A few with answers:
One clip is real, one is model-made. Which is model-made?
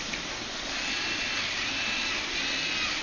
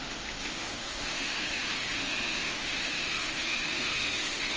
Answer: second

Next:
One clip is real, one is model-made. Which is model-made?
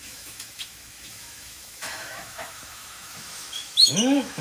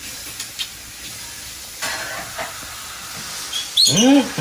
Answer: first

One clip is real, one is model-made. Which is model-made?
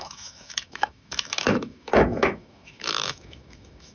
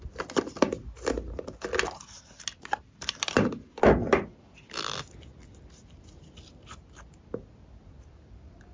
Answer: first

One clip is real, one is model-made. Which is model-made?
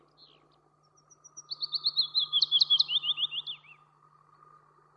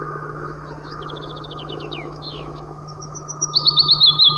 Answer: second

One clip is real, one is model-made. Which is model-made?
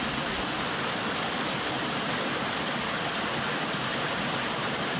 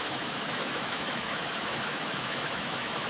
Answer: second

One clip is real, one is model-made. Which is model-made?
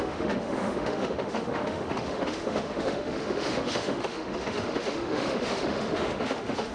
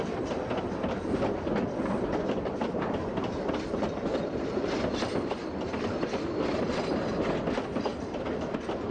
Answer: first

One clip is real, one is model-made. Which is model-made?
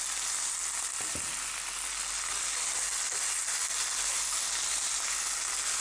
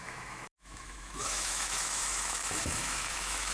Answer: second